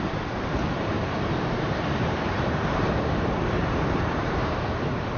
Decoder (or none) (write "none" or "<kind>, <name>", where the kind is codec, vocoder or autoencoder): vocoder, BigVGAN v2